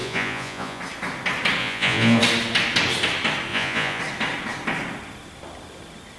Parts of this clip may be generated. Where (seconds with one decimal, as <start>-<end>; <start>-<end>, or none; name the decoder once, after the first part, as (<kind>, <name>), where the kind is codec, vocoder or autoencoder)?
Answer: 0.0-0.8 (vocoder, Vocos); 1.6-2.2; 3.5-4.0